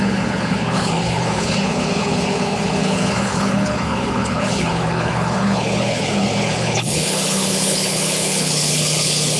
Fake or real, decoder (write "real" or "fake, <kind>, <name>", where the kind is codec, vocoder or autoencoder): fake, codec, HILCodec